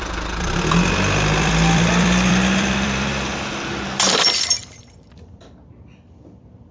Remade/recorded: remade